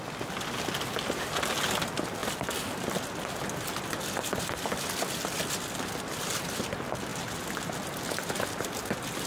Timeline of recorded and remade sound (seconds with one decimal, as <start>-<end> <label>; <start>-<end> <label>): 0.0-9.3 recorded